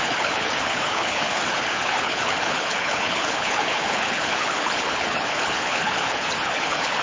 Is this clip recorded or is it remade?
remade